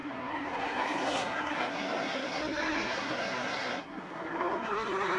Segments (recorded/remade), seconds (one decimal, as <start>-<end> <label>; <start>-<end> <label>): 0.0-5.2 remade